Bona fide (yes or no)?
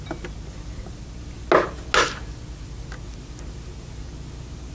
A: yes